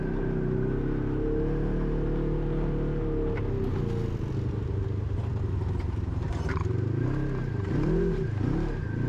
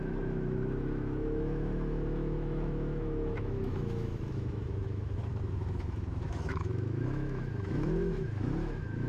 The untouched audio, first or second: first